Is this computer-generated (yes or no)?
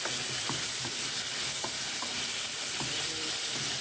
no